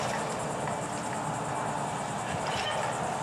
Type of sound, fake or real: real